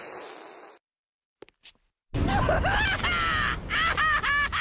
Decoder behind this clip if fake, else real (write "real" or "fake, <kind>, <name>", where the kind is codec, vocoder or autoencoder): real